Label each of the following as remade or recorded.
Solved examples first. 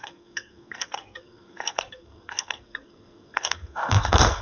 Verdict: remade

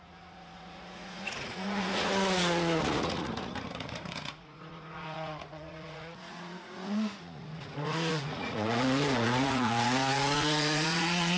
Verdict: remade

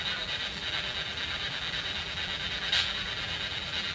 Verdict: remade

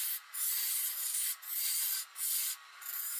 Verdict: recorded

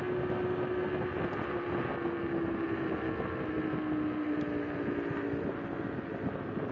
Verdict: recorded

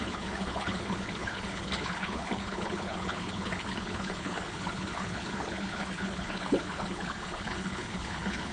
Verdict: remade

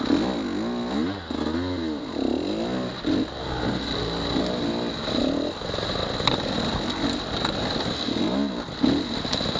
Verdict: recorded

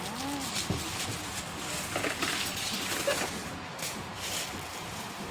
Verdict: recorded